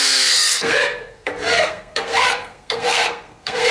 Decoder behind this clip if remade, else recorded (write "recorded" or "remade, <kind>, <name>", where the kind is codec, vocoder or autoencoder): remade, codec, SNAC